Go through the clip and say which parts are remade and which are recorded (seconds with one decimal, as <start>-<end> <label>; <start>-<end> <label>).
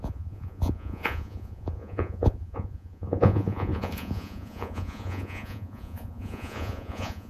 0.0-7.3 remade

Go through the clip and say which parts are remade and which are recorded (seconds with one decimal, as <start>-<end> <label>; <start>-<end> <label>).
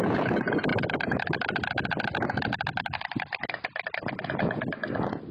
0.0-5.3 recorded